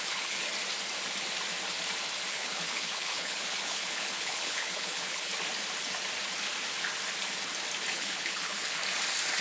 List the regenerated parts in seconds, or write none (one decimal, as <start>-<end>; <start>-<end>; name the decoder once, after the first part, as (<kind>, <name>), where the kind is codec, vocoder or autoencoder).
0.0-0.5 (codec, HILCodec); 2.3-5.3; 7.9-8.8